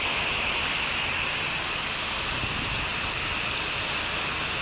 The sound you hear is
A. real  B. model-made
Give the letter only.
A